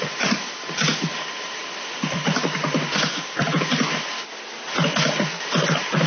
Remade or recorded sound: recorded